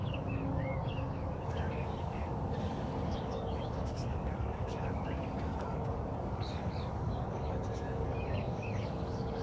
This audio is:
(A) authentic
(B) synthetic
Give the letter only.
B